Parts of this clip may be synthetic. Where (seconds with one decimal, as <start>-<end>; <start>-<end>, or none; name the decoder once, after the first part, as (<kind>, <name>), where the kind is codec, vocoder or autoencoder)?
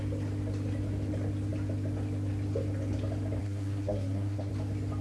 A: 3.4-4.5 (codec, SNAC)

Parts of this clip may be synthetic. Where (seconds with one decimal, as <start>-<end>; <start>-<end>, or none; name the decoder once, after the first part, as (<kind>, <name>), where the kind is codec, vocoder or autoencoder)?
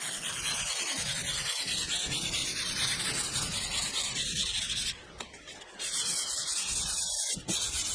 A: none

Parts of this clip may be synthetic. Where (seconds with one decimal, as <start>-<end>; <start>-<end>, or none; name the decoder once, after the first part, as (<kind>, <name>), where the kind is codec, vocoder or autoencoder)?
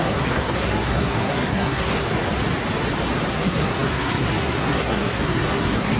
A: 0.0-2.1 (codec, SNAC); 3.3-6.0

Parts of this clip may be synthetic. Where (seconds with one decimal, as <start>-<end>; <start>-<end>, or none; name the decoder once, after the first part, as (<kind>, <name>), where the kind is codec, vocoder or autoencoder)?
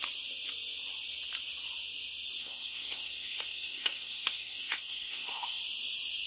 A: 2.4-5.6 (codec, SNAC)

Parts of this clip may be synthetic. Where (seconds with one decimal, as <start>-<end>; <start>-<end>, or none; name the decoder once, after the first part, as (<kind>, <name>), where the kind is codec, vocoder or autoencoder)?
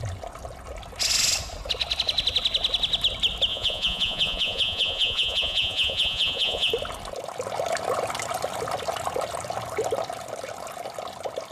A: 3.5-6.7 (vocoder, Vocos)